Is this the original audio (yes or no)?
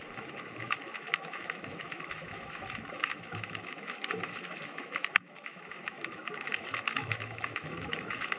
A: no